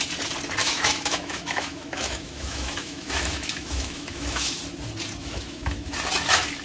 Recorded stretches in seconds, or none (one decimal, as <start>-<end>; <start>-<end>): 0.0-0.6; 4.6-5.2; 5.9-6.6